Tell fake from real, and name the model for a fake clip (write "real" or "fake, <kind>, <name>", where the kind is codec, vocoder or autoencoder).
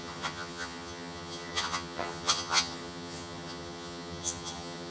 fake, vocoder, HiFi-GAN